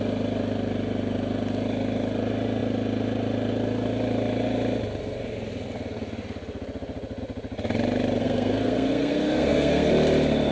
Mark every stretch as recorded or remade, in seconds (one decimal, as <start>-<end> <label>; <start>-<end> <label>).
0.0-8.2 recorded; 8.2-9.9 remade; 9.9-10.5 recorded